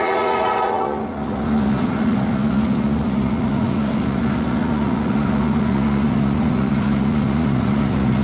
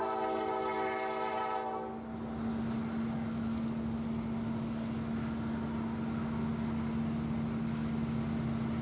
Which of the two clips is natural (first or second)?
second